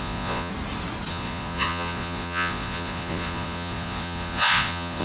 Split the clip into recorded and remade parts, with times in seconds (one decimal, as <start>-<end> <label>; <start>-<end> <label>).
0.0-0.5 remade; 0.5-1.1 recorded; 1.1-5.0 remade